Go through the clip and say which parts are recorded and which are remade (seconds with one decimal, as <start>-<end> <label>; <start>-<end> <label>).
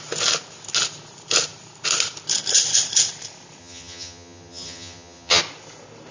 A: 0.0-3.6 recorded; 3.6-5.4 remade; 5.4-6.1 recorded